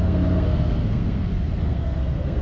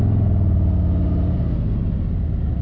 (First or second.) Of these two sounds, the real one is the second